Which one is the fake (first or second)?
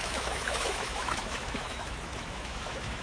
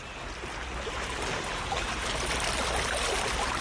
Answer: first